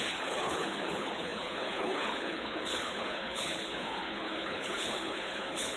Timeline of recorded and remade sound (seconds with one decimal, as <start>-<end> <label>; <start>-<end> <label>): 0.0-5.8 remade